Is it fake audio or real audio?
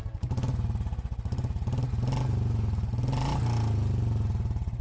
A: real